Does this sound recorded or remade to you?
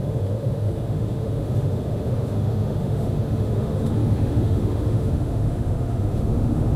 remade